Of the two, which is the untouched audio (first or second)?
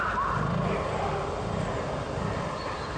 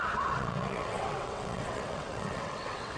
first